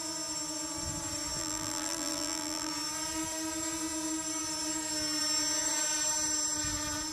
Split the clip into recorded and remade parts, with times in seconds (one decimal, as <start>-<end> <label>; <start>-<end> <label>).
0.0-1.4 recorded; 1.4-2.7 remade; 2.7-7.1 recorded